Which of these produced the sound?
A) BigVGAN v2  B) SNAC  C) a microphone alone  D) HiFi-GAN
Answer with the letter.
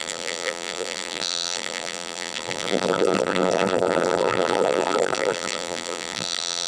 A